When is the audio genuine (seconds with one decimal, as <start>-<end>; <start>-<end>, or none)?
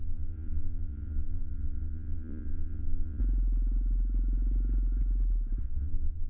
3.2-5.6